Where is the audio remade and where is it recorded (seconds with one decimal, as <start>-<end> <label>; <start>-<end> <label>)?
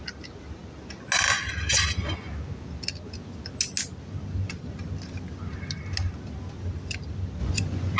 0.0-7.4 recorded; 7.4-8.0 remade